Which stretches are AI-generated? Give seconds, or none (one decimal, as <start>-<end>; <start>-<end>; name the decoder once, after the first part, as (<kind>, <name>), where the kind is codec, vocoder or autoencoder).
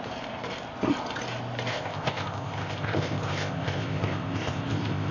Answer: 1.7-5.1 (codec, ZipCodec)